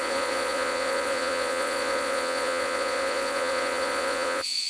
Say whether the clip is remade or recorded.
remade